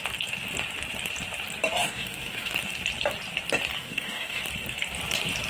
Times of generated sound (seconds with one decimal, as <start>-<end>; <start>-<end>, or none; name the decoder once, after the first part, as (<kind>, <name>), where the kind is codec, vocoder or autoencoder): 1.8-2.5 (codec, DAC); 3.8-4.4